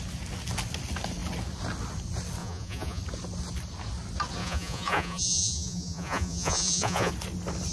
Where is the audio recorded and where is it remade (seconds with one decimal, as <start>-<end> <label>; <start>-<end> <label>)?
0.0-2.4 recorded; 2.4-3.0 remade; 3.0-4.4 recorded; 4.4-7.1 remade; 7.1-7.7 recorded